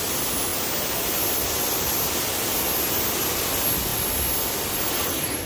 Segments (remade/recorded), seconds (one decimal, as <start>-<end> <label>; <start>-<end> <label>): 0.0-5.5 recorded